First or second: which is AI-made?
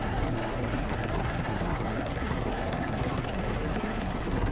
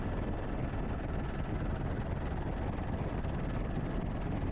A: first